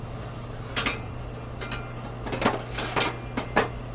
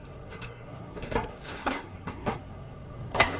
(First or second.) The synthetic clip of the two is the second